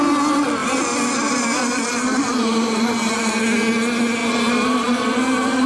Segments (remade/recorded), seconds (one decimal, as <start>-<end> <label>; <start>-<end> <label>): 0.0-0.6 recorded; 0.6-3.4 remade; 3.4-4.2 recorded; 4.2-5.2 remade; 5.2-5.7 recorded